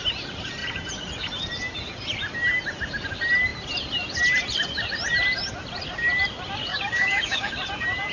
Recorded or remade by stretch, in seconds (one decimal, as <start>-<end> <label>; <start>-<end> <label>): 0.0-6.7 recorded; 6.7-7.5 remade; 7.5-8.1 recorded